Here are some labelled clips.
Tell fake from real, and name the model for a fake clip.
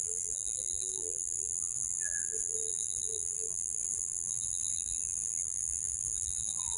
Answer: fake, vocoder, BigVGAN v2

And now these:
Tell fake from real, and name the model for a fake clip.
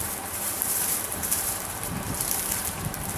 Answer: fake, vocoder, BigVGAN v2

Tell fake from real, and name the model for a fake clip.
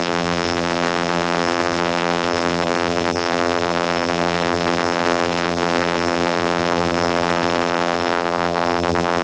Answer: fake, vocoder, BigVGAN v2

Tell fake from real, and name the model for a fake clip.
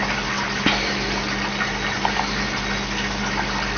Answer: real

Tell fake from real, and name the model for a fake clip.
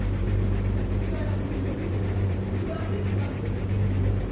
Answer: fake, vocoder, BigVGAN v2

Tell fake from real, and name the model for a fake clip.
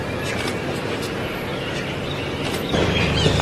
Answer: fake, vocoder, BigVGAN v2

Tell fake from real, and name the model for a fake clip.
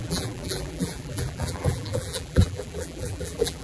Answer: fake, vocoder, BigVGAN v2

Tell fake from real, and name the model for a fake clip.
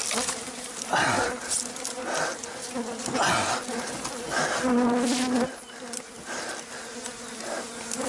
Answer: real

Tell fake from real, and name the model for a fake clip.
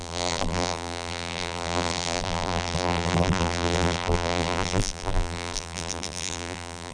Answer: fake, vocoder, BigVGAN v2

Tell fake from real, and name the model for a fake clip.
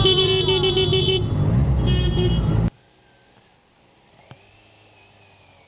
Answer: real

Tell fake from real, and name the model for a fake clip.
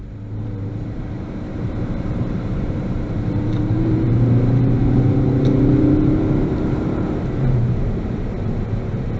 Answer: fake, vocoder, BigVGAN v2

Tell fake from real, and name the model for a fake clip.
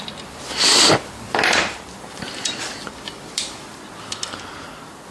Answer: fake, vocoder, BigVGAN v2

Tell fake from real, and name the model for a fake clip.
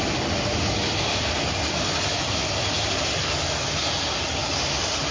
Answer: real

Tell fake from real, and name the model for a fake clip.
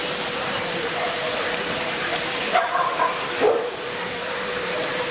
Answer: fake, vocoder, BigVGAN v2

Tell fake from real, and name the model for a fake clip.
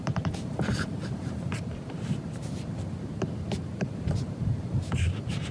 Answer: fake, vocoder, BigVGAN v2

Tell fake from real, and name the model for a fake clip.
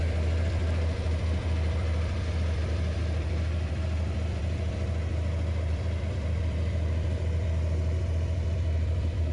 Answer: fake, vocoder, BigVGAN v2